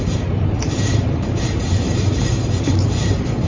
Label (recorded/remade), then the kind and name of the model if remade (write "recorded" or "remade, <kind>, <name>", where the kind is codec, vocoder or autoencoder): remade, vocoder, BigVGAN v2